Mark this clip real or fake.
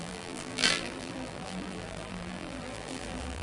fake